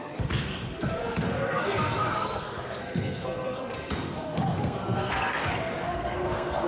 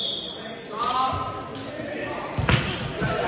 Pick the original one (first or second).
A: second